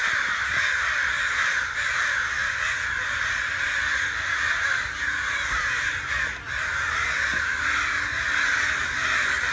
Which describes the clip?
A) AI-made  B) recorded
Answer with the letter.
B